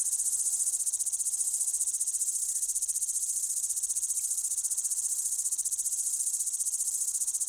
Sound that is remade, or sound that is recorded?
remade